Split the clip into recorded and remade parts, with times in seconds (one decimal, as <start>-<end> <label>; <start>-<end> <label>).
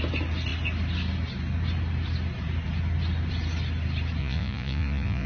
0.0-4.2 recorded; 4.2-5.3 remade